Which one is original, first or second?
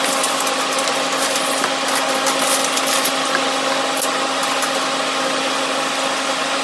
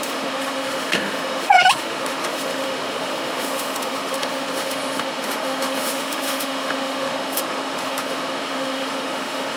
first